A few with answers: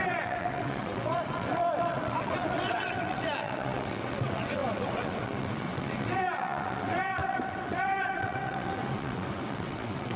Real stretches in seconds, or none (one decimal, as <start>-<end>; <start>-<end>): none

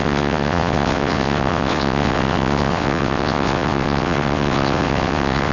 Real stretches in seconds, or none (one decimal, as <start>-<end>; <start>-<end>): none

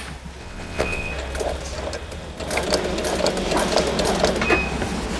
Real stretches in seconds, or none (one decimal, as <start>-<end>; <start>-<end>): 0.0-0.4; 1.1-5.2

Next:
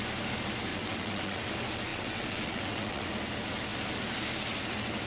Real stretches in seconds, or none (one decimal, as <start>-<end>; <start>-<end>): 0.0-0.7; 1.5-1.9; 3.1-5.1

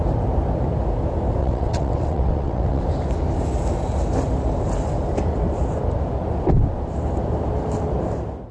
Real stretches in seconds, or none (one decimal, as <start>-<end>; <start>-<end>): 0.0-1.4; 2.8-8.5

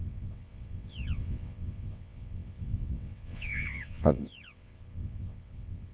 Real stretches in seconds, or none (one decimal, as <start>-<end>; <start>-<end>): none